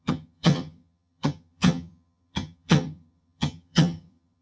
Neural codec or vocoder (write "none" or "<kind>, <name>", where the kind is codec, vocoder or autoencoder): vocoder, HiFi-GAN